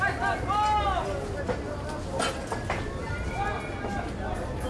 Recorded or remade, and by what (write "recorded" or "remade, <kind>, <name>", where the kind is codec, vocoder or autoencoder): recorded